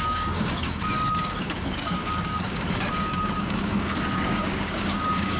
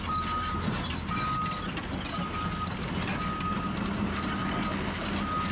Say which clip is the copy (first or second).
first